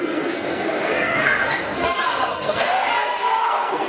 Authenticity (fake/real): fake